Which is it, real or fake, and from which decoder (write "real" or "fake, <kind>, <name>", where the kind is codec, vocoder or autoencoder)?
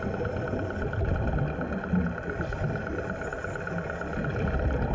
real